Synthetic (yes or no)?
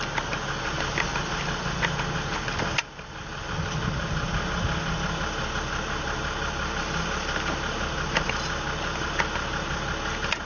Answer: no